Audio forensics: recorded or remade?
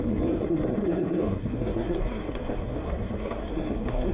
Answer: remade